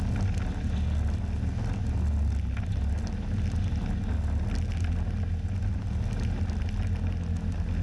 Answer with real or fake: real